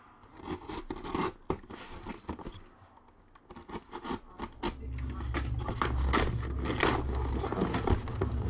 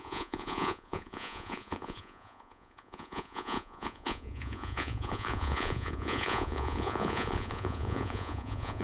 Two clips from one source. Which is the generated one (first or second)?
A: second